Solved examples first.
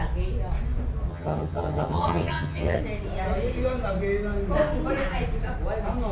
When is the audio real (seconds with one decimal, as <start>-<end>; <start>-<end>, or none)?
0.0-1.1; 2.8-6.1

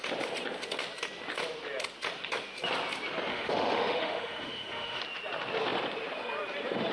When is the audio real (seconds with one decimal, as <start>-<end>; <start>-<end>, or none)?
0.0-3.3; 5.0-6.9

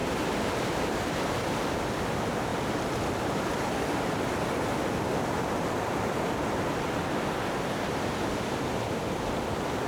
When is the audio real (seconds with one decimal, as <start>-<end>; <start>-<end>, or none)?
0.0-9.9

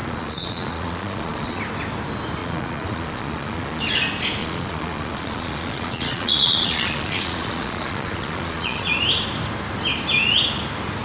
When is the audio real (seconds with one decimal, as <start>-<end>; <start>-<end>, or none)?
1.6-2.4; 3.8-4.4; 8.9-11.0

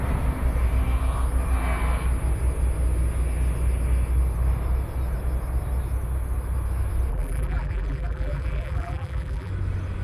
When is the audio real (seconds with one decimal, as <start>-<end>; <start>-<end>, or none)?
0.0-7.1; 9.5-10.0